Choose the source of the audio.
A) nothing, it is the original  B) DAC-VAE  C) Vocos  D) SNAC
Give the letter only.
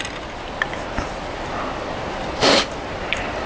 A